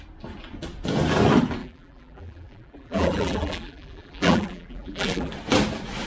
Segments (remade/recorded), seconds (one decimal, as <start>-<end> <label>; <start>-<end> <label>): 0.0-1.6 recorded; 1.6-5.3 remade; 5.3-6.1 recorded